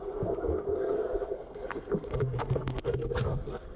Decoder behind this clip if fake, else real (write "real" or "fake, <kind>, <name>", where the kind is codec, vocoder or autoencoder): fake, codec, SNAC